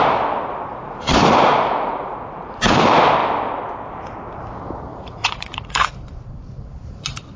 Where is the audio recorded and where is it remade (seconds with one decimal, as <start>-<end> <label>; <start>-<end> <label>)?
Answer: 0.0-0.7 recorded; 0.7-2.6 remade; 2.6-4.9 recorded; 4.9-5.9 remade; 5.9-7.4 recorded

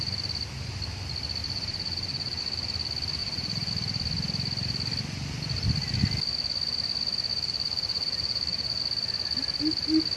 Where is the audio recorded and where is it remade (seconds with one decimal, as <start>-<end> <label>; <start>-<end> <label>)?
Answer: 0.0-1.4 recorded; 1.4-2.4 remade; 2.4-3.2 recorded; 3.2-3.7 remade; 3.7-7.3 recorded; 7.3-8.8 remade; 8.8-10.2 recorded

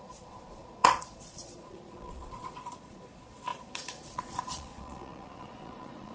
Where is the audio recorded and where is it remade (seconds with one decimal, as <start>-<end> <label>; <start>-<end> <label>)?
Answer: 0.0-6.1 remade

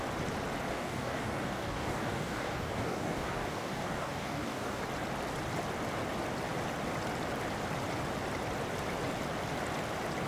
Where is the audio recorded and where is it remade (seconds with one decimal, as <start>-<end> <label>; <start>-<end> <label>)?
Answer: 0.0-0.7 recorded; 0.7-4.8 remade; 4.8-10.3 recorded

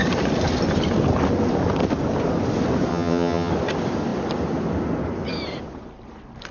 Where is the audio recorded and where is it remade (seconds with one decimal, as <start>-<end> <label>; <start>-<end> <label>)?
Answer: 0.0-2.9 recorded; 2.9-3.5 remade; 3.5-6.5 recorded

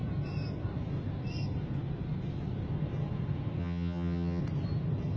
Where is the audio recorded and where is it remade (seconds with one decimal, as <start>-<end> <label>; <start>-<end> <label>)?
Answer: 0.0-3.6 recorded; 3.6-4.4 remade; 4.4-5.2 recorded

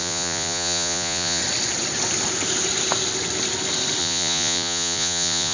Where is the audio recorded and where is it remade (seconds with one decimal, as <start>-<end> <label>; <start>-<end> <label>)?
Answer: 0.0-1.4 remade; 1.4-4.0 recorded; 4.0-5.5 remade